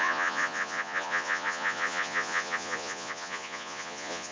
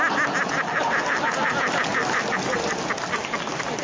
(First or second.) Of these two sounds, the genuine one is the second